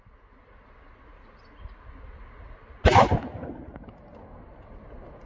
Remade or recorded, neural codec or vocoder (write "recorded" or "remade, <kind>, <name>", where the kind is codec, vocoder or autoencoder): recorded